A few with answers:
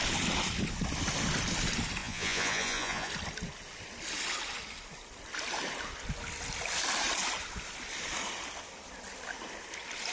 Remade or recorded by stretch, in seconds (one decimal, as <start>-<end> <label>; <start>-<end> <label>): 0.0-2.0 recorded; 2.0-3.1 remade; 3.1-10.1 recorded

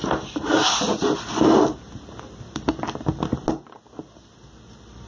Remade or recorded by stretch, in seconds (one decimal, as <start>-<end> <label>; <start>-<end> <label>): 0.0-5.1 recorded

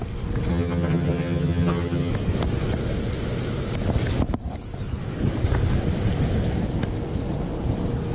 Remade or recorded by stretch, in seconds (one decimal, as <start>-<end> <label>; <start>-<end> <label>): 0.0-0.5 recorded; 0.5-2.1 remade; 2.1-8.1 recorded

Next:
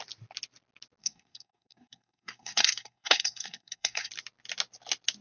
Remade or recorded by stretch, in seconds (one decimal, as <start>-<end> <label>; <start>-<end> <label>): 0.0-1.0 recorded; 1.0-4.1 remade; 4.1-5.2 recorded

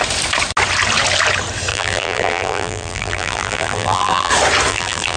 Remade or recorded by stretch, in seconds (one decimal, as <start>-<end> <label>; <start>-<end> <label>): 0.0-1.7 recorded; 1.7-4.3 remade; 4.3-4.7 recorded; 4.7-5.2 remade

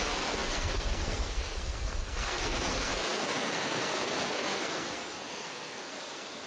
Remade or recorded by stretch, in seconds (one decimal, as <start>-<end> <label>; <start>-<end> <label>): 0.0-6.5 remade